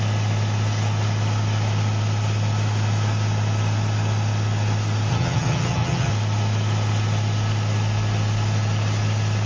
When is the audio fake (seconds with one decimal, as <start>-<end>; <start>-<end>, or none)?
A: 5.1-6.1